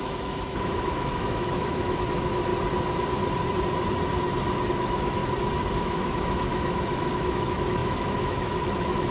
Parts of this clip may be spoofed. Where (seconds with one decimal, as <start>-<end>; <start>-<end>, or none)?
0.0-2.5; 4.7-5.2; 5.7-9.1